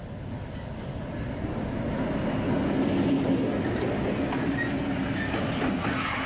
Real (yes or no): yes